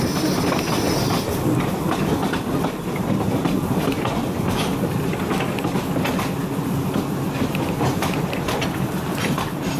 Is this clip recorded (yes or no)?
yes